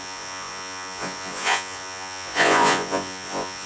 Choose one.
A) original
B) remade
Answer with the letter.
B